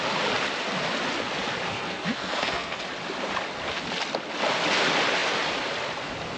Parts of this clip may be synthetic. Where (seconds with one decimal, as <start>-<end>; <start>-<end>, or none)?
1.7-2.8

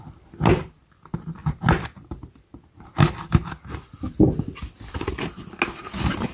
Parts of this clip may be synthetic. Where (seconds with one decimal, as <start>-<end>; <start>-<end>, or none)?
none